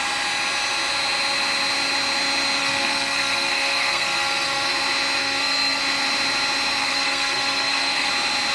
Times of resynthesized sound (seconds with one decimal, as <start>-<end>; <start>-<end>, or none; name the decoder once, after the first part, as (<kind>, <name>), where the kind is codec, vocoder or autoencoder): 2.6-4.7 (codec, SNAC); 5.2-5.8; 6.8-8.1